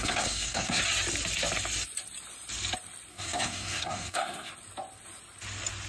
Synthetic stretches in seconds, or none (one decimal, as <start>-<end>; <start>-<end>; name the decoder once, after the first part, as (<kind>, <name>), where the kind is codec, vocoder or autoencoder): 0.0-0.8 (codec, SNAC); 3.1-4.5